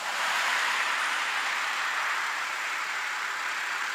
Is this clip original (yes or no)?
no